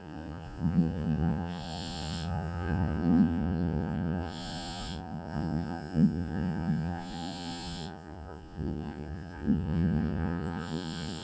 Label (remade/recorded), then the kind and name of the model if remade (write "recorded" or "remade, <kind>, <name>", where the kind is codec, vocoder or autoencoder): remade, vocoder, Vocos